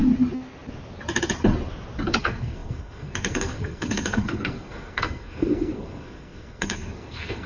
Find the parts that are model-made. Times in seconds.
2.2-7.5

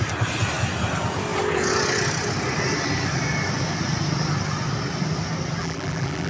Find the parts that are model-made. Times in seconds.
5.6-6.3

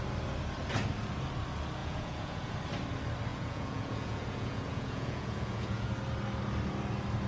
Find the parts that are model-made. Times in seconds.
1.8-2.5; 3.3-5.9

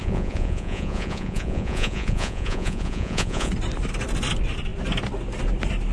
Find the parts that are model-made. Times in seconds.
0.0-3.5